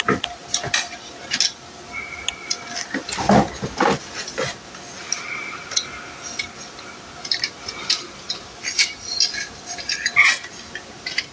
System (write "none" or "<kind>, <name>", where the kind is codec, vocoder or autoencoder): none